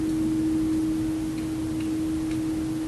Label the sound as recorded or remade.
recorded